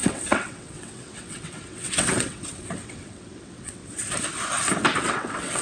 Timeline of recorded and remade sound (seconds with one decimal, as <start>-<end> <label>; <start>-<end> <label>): 0.0-3.8 remade; 3.8-5.0 recorded; 5.0-5.6 remade